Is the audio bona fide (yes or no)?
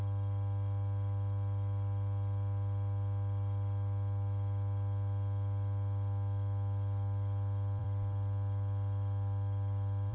no